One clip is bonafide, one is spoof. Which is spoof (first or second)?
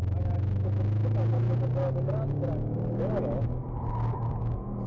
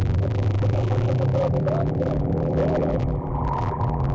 second